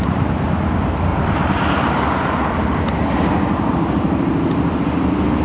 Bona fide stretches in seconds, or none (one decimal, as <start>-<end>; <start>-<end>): 0.0-1.1; 2.8-5.4